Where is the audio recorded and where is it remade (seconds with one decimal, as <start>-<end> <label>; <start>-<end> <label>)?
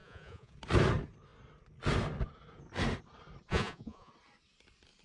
0.0-0.5 remade; 0.5-3.5 recorded; 3.5-4.1 remade; 4.1-5.0 recorded